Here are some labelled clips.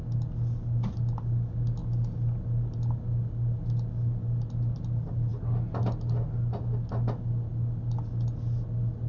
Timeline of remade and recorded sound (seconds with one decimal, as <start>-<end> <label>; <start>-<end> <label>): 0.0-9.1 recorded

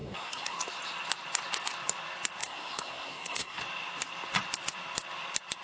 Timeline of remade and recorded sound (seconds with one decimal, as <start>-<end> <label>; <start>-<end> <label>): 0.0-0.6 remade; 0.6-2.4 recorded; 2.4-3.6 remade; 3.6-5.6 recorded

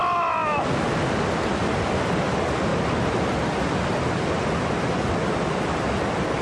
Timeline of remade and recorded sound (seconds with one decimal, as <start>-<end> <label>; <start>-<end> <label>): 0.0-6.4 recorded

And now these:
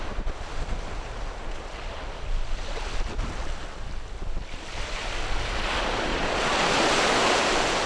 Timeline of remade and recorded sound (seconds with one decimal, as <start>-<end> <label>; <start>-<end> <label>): 0.0-6.1 recorded; 6.1-6.9 remade; 6.9-7.9 recorded

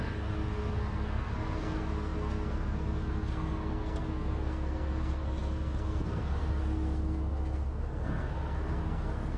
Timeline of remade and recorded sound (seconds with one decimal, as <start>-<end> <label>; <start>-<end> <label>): 0.0-9.4 remade

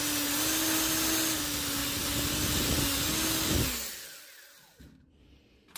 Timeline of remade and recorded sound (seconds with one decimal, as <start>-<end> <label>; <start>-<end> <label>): 0.0-5.8 recorded

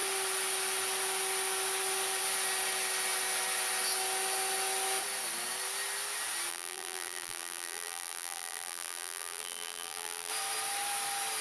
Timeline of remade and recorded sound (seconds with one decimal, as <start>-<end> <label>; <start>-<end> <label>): 0.0-6.5 recorded; 6.5-10.3 remade; 10.3-11.4 recorded